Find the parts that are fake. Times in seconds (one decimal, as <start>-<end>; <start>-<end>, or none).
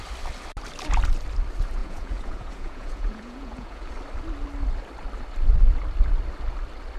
1.8-3.9